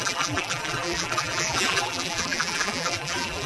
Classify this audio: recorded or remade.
remade